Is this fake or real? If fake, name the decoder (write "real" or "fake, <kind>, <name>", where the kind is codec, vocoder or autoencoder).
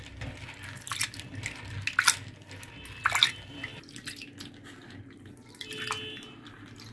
real